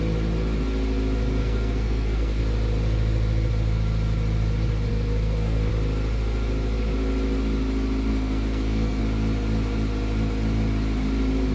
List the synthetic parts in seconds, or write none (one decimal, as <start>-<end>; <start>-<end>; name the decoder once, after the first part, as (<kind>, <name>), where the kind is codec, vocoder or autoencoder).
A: 1.4-2.4 (codec, SNAC); 4.9-5.7; 8.1-9.0